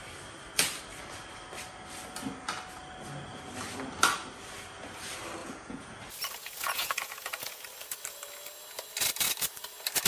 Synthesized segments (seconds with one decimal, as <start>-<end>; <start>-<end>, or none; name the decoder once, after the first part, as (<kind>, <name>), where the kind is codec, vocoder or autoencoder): 5.4-6.0 (vocoder, Vocos); 6.4-7.6